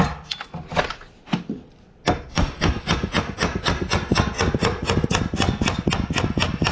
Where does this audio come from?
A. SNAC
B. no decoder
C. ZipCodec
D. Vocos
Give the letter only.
B